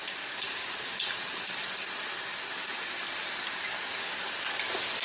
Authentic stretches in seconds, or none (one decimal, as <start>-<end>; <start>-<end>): 1.4-5.0